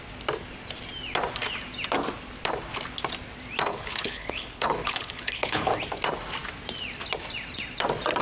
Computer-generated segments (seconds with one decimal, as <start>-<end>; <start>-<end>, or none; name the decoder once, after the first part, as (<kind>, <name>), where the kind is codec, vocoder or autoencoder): 3.7-5.7 (codec, HILCodec)